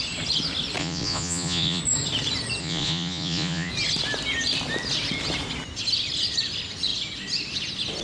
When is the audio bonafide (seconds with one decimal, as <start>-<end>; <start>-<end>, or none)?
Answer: 0.0-0.8; 1.8-2.6; 3.7-8.0

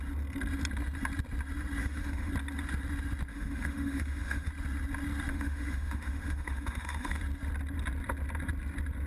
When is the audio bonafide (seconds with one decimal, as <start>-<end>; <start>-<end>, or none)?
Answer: 0.0-1.8; 2.3-3.3; 4.5-5.3; 7.2-9.1

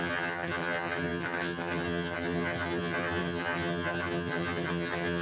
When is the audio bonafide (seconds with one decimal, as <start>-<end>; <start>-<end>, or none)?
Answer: none

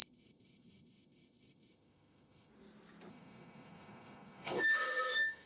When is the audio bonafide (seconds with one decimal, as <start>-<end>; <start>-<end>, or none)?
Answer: 2.5-3.1

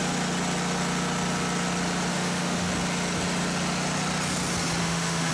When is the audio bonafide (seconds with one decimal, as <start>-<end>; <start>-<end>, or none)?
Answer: 0.0-2.1; 2.7-4.8

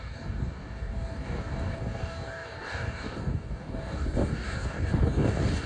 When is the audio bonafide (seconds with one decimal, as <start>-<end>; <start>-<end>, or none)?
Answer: none